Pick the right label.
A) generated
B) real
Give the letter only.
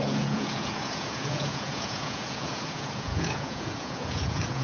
A